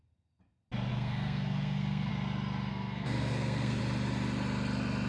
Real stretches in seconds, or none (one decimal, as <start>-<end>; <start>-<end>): 0.0-0.9; 2.1-2.7; 3.8-5.1